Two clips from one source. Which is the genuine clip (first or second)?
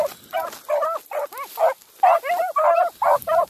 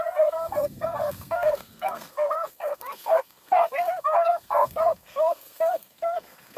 first